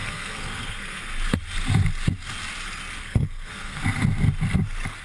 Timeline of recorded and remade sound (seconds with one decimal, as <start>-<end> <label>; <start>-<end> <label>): 0.0-1.0 remade; 1.0-3.0 recorded; 3.0-3.8 remade; 3.8-5.0 recorded